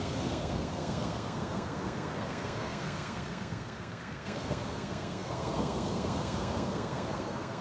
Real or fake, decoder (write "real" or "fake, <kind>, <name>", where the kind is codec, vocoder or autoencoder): fake, codec, SNAC